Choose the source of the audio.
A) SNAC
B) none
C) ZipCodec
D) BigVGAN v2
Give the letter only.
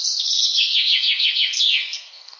A